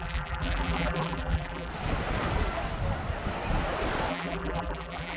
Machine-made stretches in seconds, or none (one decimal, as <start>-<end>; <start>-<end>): 0.0-1.7; 4.1-5.2